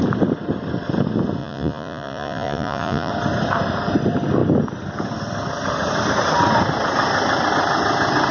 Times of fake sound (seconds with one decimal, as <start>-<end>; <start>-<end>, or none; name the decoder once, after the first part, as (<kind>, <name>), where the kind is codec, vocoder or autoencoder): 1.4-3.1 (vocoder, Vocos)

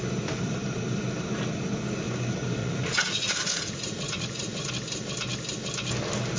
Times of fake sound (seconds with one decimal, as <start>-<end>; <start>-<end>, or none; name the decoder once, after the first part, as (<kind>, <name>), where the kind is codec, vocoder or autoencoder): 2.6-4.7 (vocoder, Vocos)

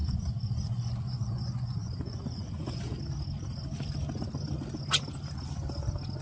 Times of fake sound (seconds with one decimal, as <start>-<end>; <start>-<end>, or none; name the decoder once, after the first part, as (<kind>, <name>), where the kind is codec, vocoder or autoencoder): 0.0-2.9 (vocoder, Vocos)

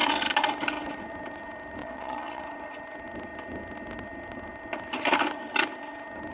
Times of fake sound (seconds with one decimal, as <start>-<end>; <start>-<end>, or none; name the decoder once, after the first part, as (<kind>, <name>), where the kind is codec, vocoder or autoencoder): 1.8-2.4 (vocoder, Vocos)

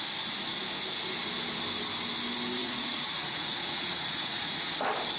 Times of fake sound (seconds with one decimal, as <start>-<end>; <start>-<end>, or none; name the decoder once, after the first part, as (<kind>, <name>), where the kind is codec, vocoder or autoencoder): 2.6-4.6 (vocoder, Vocos)

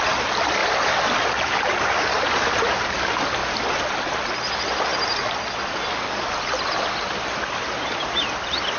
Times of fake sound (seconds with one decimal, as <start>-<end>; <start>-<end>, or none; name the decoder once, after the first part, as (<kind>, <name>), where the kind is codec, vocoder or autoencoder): none

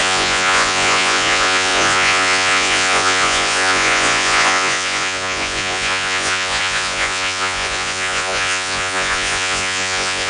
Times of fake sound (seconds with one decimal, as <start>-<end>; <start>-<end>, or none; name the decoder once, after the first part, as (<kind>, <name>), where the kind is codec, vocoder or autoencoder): 0.0-10.3 (vocoder, Vocos)